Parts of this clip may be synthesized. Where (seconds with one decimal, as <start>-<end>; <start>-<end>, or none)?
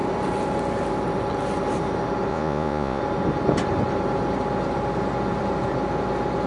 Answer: 2.3-3.0